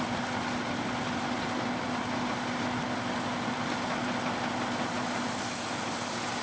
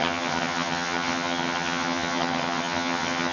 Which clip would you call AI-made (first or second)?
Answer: second